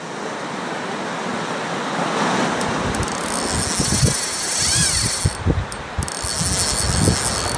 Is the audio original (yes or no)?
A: yes